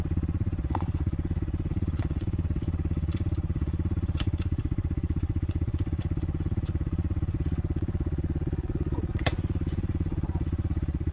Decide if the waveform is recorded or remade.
remade